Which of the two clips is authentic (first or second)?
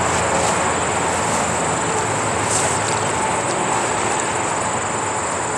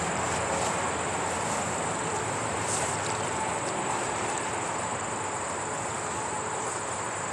first